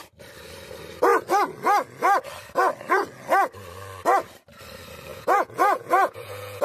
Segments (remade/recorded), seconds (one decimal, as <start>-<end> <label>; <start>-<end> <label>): 0.0-5.1 recorded; 5.1-6.6 remade

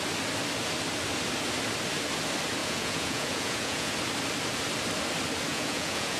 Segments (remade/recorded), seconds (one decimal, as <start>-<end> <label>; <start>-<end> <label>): 0.0-2.6 recorded; 2.6-3.9 remade; 3.9-5.5 recorded; 5.5-6.2 remade

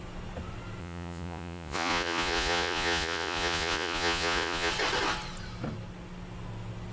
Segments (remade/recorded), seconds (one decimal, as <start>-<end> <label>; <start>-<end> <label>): 0.0-0.8 recorded; 0.8-4.7 remade; 4.7-6.9 recorded

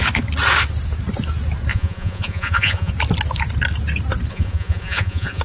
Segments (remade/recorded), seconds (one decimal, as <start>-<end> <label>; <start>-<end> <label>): 0.0-1.7 recorded; 1.7-2.9 remade; 2.9-4.3 recorded; 4.3-5.4 remade

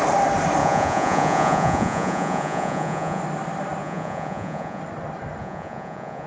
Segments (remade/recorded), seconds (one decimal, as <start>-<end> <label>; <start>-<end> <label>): 0.0-0.6 recorded; 0.6-3.2 remade; 3.2-3.8 recorded; 3.8-4.8 remade; 4.8-5.4 recorded; 5.4-6.3 remade

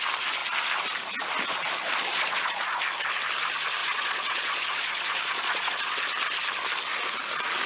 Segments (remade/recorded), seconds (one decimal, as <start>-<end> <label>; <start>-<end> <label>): 0.0-2.1 recorded; 2.1-2.8 remade; 2.8-3.8 recorded; 3.8-5.7 remade; 5.7-7.7 recorded

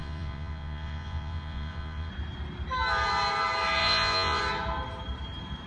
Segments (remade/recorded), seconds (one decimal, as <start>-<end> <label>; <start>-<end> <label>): 0.0-2.1 remade; 2.1-3.8 recorded; 3.8-4.4 remade; 4.4-5.7 recorded

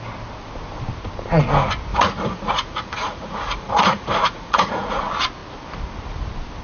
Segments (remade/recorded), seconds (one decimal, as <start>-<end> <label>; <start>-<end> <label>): 0.0-1.9 recorded; 1.9-5.0 remade; 5.0-6.6 recorded